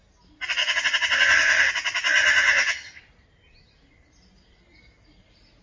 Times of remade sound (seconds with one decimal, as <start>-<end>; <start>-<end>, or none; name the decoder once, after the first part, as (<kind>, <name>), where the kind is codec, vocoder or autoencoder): 0.6-1.7 (vocoder, HiFi-GAN); 2.2-3.0